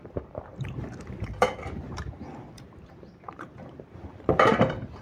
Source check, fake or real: fake